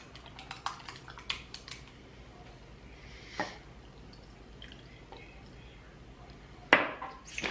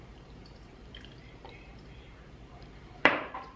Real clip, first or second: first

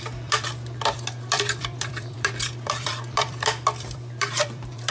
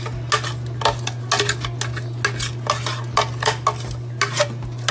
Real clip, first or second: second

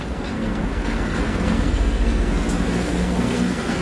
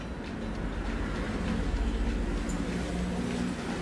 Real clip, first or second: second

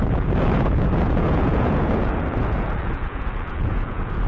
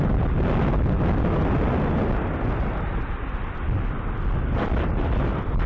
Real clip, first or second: second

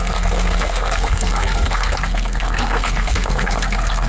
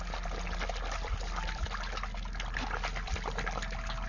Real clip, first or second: second